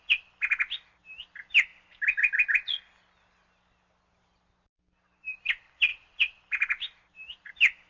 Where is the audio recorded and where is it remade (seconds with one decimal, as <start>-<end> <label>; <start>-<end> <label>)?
0.0-5.9 recorded; 5.9-7.5 remade; 7.5-7.9 recorded